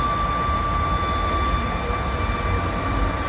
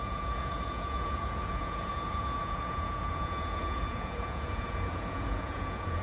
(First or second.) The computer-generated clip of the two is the second